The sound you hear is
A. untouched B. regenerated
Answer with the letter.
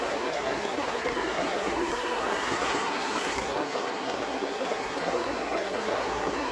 B